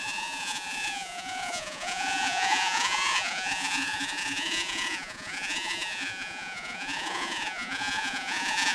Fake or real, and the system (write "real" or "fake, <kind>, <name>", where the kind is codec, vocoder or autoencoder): fake, vocoder, Vocos